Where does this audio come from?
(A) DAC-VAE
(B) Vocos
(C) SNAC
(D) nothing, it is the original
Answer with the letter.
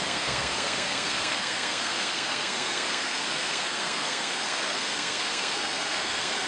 C